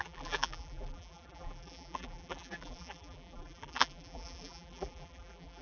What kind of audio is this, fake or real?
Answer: fake